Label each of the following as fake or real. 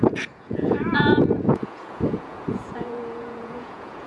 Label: fake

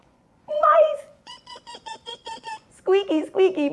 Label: fake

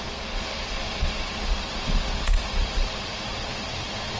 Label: fake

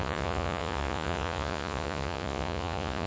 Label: fake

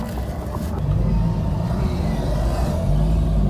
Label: real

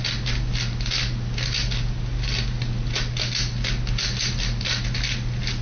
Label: real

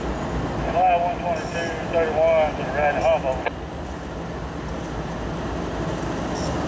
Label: real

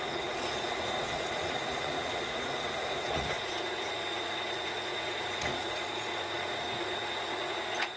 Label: fake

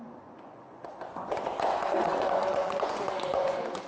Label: fake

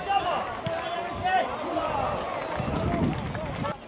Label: real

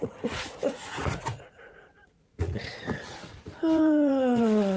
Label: fake